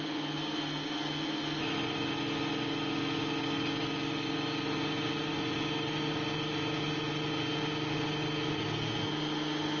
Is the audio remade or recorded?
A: recorded